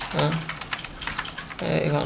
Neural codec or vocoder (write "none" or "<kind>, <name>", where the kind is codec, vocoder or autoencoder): none